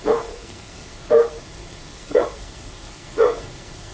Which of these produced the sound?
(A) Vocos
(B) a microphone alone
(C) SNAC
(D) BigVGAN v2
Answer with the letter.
C